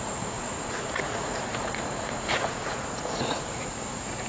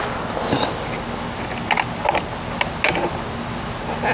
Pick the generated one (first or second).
first